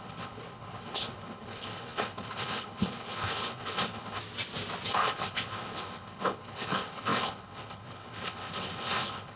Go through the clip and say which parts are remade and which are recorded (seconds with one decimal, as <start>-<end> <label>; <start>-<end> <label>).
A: 0.0-4.2 remade; 4.2-4.9 recorded; 4.9-9.4 remade